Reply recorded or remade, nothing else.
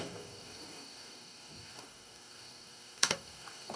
remade